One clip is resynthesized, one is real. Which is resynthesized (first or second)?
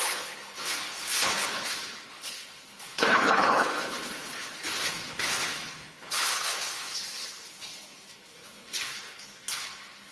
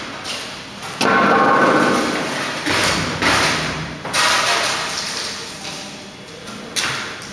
first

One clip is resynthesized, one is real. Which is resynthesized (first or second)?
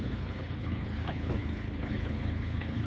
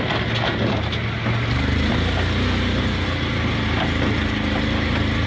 first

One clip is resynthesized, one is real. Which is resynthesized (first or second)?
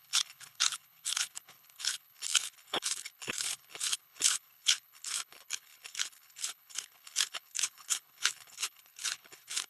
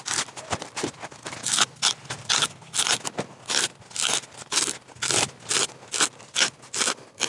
first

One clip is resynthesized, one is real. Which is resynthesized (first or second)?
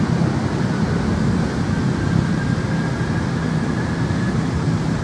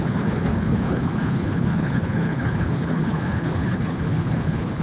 second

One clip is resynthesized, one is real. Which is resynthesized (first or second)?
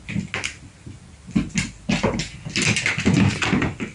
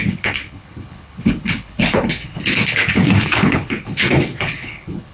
second